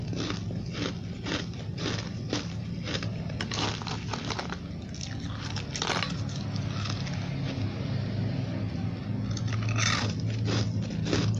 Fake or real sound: real